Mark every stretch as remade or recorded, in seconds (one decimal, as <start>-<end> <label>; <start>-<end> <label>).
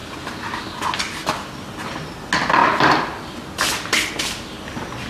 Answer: 0.0-5.1 recorded